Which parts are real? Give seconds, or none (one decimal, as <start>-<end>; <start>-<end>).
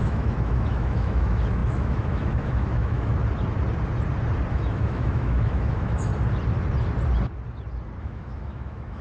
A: 3.1-4.5; 6.1-8.0